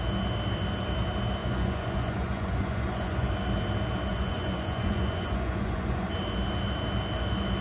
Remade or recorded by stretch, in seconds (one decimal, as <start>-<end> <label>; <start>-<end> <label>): 0.0-1.4 recorded; 1.4-3.3 remade; 3.3-4.1 recorded; 4.1-6.1 remade; 6.1-7.6 recorded

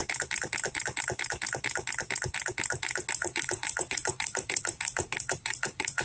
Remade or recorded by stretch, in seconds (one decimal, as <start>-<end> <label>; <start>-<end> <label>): 0.0-3.2 recorded; 3.2-6.0 remade

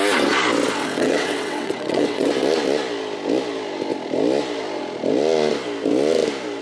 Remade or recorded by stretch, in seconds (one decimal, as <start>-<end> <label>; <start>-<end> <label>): 0.0-0.8 recorded; 0.8-2.3 remade; 2.3-6.6 recorded

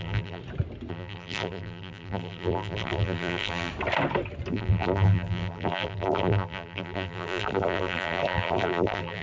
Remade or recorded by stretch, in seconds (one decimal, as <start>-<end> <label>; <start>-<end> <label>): 0.0-0.4 remade; 0.4-0.9 recorded; 0.9-3.7 remade; 3.7-4.5 recorded; 4.5-9.2 remade

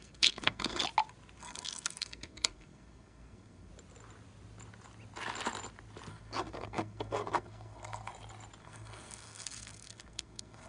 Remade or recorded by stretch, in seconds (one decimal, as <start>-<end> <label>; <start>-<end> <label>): 0.0-0.8 remade; 0.8-1.4 recorded; 1.4-3.7 remade; 3.7-6.1 recorded; 6.1-8.1 remade; 8.1-8.6 recorded; 8.6-10.7 remade

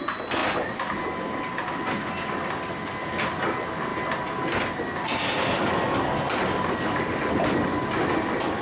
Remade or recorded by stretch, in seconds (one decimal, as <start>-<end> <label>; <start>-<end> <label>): 0.0-0.4 recorded; 0.4-2.7 remade; 2.7-8.6 recorded

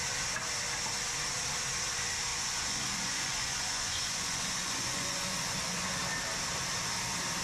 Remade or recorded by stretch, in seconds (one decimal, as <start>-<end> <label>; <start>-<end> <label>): 0.0-2.3 recorded; 2.3-6.0 remade; 6.0-7.4 recorded